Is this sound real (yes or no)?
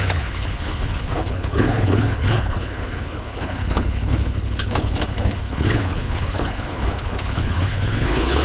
no